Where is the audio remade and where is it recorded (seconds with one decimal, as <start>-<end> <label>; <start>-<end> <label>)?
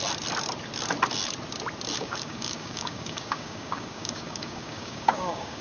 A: 0.0-2.0 recorded; 2.0-5.6 remade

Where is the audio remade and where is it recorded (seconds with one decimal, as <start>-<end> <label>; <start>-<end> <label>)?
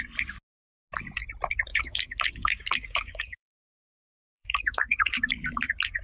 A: 0.0-1.7 recorded; 1.7-5.3 remade; 5.3-6.0 recorded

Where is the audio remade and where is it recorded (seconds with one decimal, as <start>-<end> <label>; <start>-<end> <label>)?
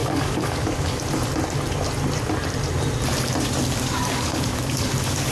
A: 0.0-1.0 remade; 1.0-3.6 recorded; 3.6-5.3 remade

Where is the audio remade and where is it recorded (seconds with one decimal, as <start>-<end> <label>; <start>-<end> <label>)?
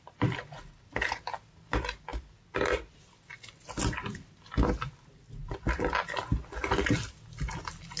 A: 0.0-8.0 recorded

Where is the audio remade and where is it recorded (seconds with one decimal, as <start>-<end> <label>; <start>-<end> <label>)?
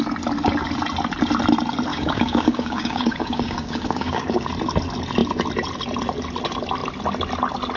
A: 0.0-1.9 recorded; 1.9-4.5 remade; 4.5-7.8 recorded